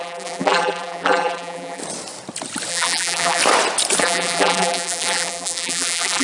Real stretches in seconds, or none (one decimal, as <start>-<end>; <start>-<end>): 1.8-2.7; 3.4-4.0